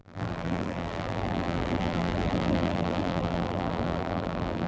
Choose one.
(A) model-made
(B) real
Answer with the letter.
A